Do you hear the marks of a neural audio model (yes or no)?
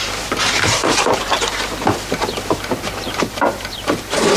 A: yes